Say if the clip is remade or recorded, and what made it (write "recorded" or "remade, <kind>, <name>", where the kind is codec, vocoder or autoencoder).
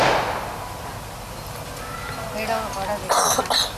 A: recorded